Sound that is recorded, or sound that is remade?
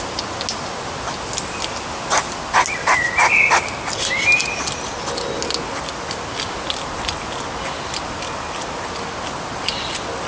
recorded